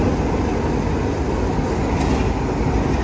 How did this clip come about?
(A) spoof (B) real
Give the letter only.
B